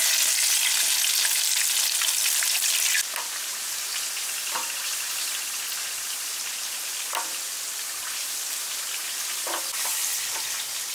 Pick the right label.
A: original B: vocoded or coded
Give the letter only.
A